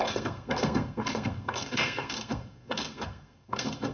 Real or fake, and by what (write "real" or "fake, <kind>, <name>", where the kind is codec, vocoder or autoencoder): fake, codec, SNAC